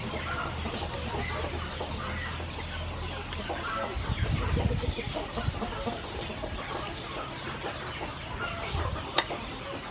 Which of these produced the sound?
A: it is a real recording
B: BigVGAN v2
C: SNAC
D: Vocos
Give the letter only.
B